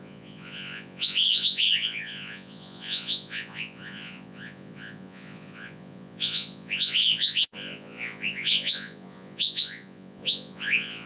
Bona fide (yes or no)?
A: no